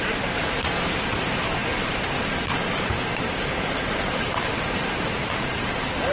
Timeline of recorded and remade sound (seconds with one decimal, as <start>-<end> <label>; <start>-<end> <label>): 0.0-6.1 remade